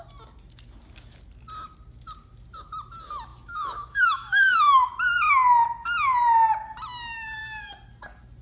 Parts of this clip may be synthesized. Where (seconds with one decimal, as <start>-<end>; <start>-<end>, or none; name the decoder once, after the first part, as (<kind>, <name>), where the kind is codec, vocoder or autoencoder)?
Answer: 3.3-4.9 (autoencoder, DAC-VAE)